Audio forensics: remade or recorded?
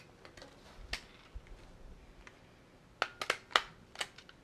recorded